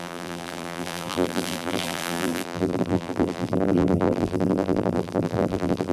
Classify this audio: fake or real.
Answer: fake